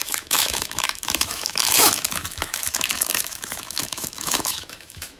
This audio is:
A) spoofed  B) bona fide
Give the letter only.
A